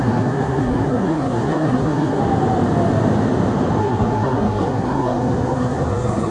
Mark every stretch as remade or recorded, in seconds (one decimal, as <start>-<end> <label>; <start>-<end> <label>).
0.0-2.2 remade; 2.2-3.8 recorded; 3.8-6.3 remade